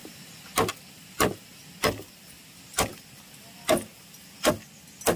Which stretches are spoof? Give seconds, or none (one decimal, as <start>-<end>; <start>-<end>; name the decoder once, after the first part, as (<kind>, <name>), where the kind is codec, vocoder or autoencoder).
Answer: 0.0-3.1 (vocoder, BigVGAN v2); 3.9-4.5